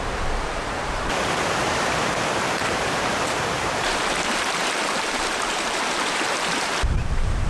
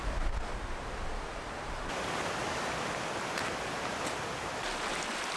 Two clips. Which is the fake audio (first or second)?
first